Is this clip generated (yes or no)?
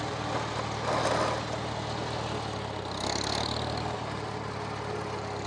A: no